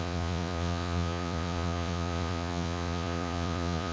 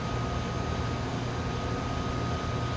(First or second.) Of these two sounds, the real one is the second